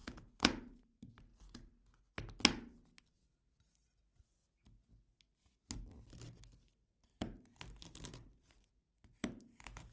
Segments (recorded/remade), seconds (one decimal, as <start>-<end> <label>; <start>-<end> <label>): 0.0-1.3 remade; 1.3-3.0 recorded; 3.0-4.4 remade; 4.4-6.1 recorded; 6.1-9.9 remade